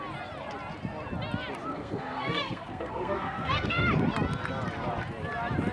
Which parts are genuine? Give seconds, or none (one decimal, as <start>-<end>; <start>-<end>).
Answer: 0.0-1.7; 3.9-5.7

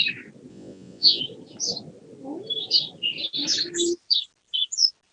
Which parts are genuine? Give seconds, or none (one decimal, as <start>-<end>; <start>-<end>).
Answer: 0.0-0.5; 1.2-5.1

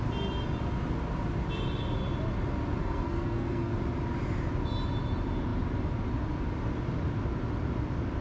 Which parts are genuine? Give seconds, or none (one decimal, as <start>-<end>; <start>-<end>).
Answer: 0.0-2.8; 3.7-8.2

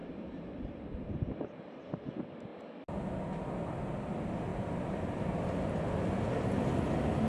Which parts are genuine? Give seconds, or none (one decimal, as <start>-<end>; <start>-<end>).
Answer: 2.1-4.5; 5.8-7.3